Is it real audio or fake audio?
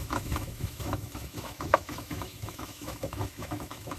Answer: fake